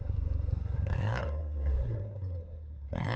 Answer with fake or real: fake